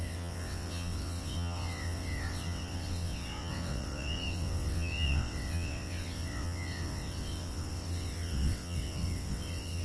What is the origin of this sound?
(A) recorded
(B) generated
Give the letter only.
B